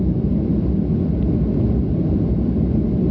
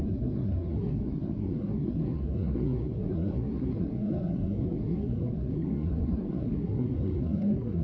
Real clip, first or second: first